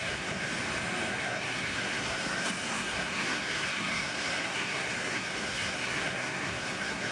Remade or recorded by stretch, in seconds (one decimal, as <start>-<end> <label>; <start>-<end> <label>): 0.0-0.5 remade; 0.5-1.1 recorded; 1.1-7.1 remade